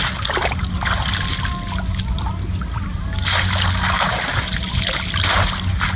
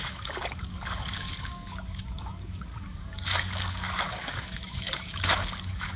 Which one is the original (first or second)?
first